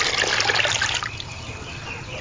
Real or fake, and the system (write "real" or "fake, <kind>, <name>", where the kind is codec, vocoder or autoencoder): real